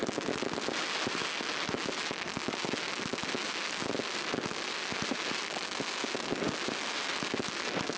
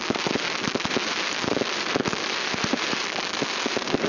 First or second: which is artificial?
second